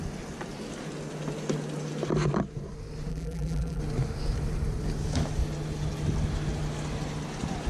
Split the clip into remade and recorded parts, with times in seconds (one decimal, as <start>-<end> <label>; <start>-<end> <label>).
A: 0.0-3.1 recorded; 3.1-3.8 remade; 3.8-7.7 recorded